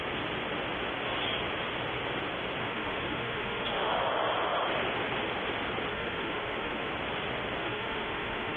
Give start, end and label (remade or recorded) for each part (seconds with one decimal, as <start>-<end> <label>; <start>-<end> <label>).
0.0-2.6 recorded; 2.6-4.0 remade; 4.0-5.9 recorded; 5.9-6.9 remade; 6.9-7.6 recorded; 7.6-8.6 remade